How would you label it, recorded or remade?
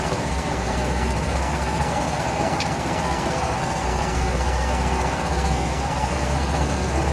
remade